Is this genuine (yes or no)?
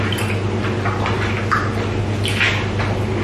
yes